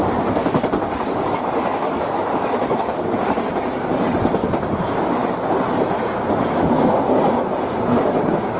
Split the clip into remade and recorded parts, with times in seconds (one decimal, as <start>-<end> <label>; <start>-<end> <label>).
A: 0.0-0.4 recorded; 0.4-3.6 remade; 3.6-8.6 recorded